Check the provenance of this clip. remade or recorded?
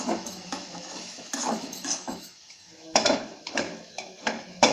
remade